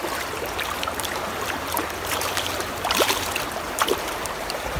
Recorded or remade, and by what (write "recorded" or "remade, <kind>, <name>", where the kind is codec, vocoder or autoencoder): remade, vocoder, BigVGAN v2